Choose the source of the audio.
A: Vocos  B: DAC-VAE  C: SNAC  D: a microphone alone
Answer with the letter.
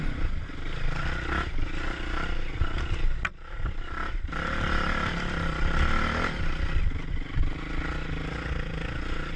D